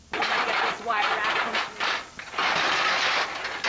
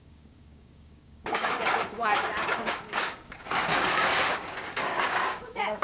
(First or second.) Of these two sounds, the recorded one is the first